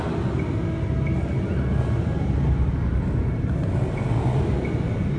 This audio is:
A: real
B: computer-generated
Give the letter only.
A